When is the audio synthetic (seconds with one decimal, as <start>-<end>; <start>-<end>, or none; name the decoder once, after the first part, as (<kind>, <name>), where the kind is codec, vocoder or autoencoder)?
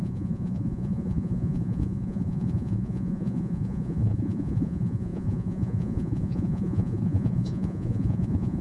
0.0-8.6 (vocoder, Vocos)